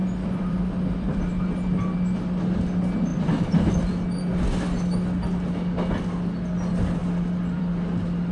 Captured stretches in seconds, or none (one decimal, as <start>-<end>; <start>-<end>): 1.3-8.3